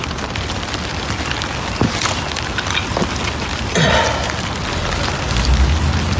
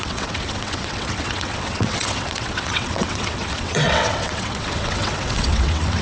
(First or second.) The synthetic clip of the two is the second